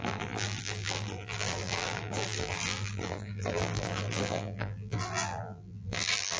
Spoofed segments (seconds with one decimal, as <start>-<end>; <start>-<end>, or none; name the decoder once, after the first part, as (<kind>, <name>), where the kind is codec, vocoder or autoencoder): 0.0-6.4 (vocoder, BigVGAN v2)